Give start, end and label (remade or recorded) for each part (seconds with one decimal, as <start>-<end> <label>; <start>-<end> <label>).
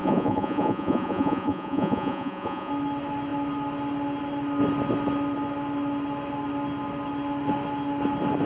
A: 0.0-2.7 remade; 2.7-8.5 recorded